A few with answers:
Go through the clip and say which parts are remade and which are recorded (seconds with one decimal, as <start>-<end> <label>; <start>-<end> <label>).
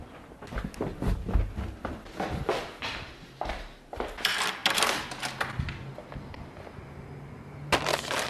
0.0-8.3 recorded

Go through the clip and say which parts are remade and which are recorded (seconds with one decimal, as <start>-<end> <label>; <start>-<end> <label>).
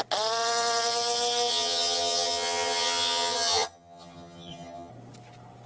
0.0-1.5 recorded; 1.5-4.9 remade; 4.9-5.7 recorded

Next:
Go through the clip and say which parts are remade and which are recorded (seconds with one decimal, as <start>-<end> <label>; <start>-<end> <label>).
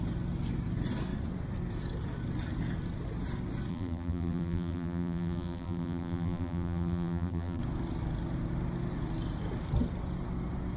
0.0-3.7 recorded; 3.7-7.6 remade; 7.6-10.8 recorded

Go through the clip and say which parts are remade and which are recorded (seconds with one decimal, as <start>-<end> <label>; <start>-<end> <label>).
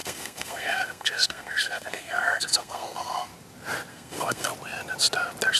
0.0-3.3 remade; 3.3-3.9 recorded; 3.9-4.5 remade; 4.5-5.6 recorded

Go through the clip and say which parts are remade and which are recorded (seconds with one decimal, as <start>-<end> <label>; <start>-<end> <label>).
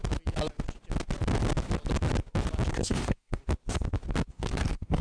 0.0-2.7 recorded; 2.7-3.4 remade; 3.4-4.3 recorded; 4.3-5.0 remade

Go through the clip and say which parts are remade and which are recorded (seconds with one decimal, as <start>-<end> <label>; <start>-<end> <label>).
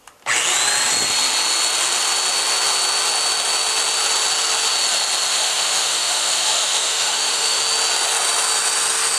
0.0-5.3 recorded; 5.3-7.6 remade; 7.6-9.2 recorded